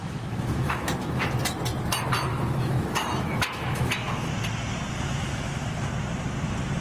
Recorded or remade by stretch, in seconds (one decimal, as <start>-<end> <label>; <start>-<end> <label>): 0.0-1.3 remade; 1.3-2.3 recorded; 2.3-4.3 remade; 4.3-5.2 recorded; 5.2-5.9 remade; 5.9-6.8 recorded